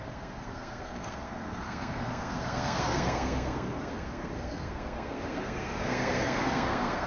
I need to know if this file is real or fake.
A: fake